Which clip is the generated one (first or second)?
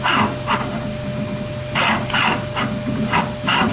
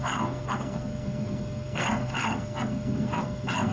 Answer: second